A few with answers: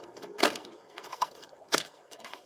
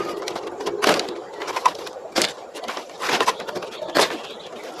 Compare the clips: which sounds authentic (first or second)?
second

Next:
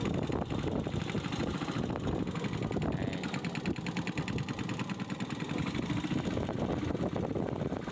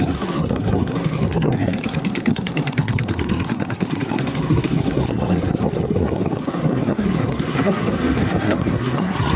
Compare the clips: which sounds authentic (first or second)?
first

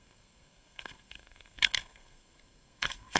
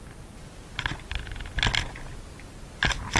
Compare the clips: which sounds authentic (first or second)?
second